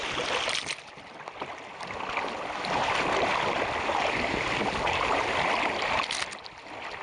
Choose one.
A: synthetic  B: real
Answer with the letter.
B